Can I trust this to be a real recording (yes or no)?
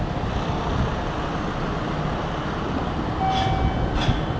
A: yes